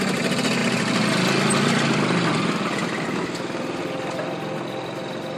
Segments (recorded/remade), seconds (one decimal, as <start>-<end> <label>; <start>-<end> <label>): 0.0-5.4 recorded